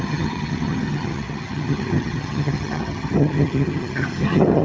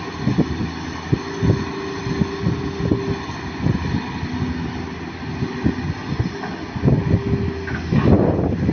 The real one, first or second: second